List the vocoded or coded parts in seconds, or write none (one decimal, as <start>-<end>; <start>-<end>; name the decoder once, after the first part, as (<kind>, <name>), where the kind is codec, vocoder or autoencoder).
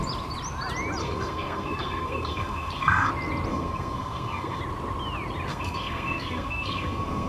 1.0-3.1 (codec, SNAC); 3.5-4.6; 5.5-7.3